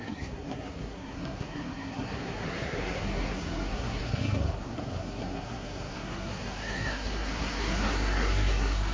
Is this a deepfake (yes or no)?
yes